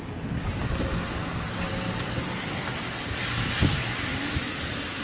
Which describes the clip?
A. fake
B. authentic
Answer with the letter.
B